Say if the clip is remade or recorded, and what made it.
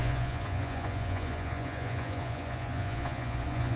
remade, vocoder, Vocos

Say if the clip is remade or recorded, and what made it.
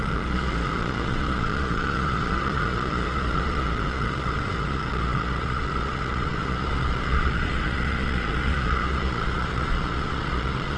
remade, vocoder, Vocos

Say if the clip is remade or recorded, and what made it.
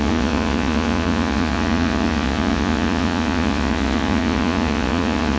remade, vocoder, Vocos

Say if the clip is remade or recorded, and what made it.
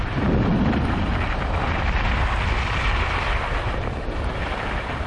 recorded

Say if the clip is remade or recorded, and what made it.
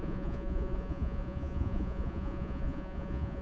remade, vocoder, Vocos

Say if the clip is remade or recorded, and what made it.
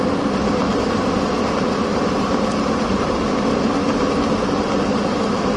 recorded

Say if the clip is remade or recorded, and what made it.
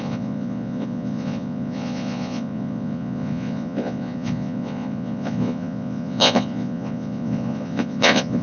remade, vocoder, Vocos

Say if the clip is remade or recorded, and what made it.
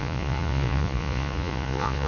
remade, vocoder, Vocos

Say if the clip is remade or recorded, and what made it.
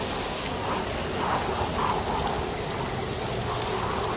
recorded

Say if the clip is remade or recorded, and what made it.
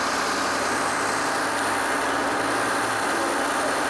recorded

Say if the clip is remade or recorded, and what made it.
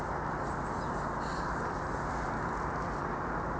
recorded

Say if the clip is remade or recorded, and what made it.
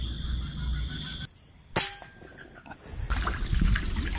recorded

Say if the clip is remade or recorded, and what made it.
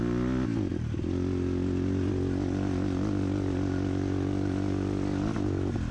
recorded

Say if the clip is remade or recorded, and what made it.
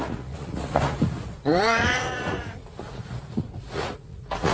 remade, vocoder, Vocos